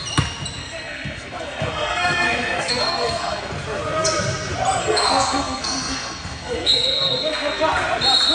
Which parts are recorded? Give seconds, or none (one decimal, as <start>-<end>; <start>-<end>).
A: 0.0-0.6; 3.5-4.8; 7.6-8.3